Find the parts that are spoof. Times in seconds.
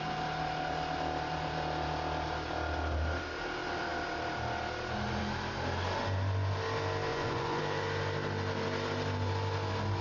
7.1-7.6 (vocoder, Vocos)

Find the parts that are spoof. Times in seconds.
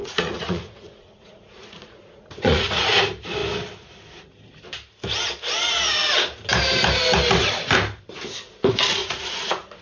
0.0-3.0 (vocoder, Vocos); 9.0-9.8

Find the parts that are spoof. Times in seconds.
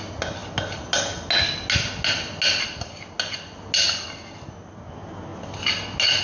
none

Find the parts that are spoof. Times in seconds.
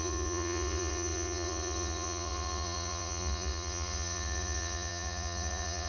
0.0-5.9 (vocoder, Vocos)